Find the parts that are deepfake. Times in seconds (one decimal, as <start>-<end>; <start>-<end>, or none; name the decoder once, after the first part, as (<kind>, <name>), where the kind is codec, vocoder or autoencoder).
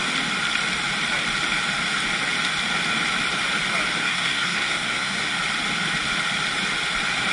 4.0-5.4 (codec, SNAC)